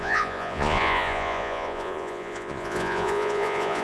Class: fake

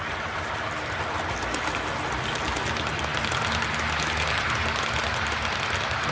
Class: real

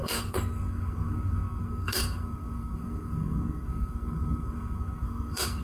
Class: fake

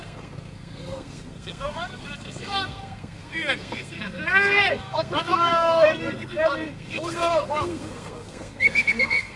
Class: fake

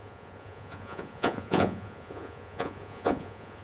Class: fake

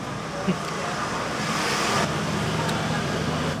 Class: real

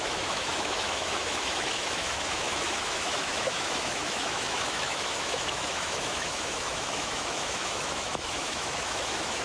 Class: fake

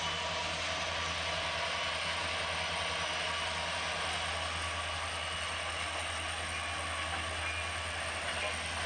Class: real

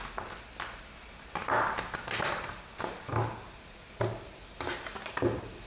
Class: real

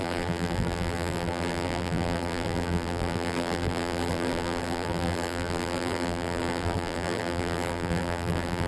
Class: fake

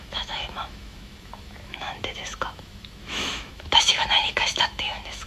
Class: fake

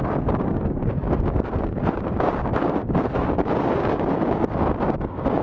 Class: fake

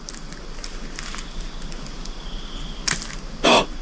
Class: real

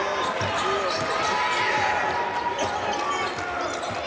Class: real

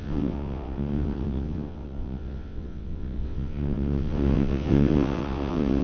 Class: fake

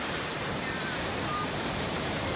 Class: fake